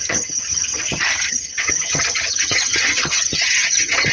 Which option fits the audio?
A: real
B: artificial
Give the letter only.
B